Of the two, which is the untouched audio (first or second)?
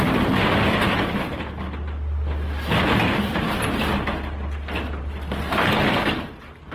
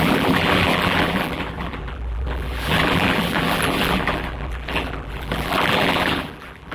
first